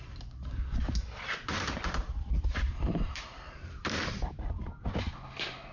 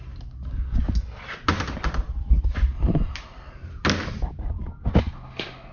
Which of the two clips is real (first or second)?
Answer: second